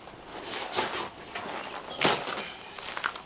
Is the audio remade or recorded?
recorded